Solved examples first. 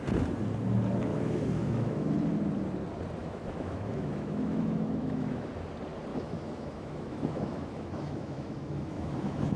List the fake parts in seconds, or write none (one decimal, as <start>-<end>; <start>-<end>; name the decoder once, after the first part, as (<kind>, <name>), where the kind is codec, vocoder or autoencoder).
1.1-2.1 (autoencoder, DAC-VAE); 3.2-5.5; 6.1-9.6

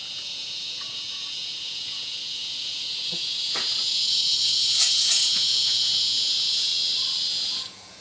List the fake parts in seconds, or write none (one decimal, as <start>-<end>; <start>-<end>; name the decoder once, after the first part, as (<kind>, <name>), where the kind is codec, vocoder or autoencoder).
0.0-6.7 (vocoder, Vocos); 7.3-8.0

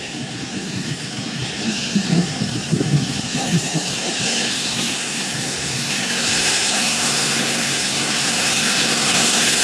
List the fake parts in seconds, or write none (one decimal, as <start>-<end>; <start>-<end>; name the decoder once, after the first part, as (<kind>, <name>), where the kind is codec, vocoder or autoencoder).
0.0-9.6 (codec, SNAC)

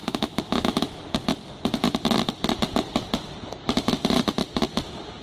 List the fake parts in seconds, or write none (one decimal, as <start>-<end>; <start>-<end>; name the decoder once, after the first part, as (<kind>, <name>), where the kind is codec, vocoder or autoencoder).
0.0-1.0 (autoencoder, DAC-VAE)

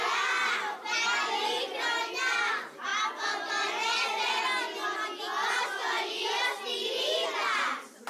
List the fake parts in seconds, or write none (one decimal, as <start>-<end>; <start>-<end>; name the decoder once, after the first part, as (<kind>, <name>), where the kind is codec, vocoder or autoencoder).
0.0-8.1 (vocoder, BigVGAN v2)

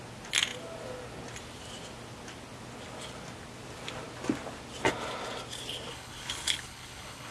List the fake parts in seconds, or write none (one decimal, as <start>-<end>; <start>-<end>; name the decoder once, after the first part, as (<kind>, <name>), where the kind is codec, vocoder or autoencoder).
5.9-7.3 (codec, HILCodec)